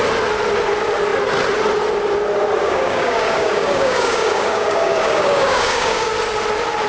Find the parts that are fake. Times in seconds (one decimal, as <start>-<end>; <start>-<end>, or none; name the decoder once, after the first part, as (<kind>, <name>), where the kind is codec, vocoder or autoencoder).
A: 2.6-6.1 (codec, DAC)